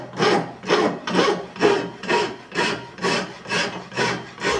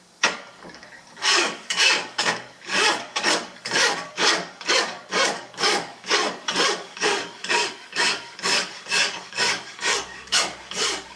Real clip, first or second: first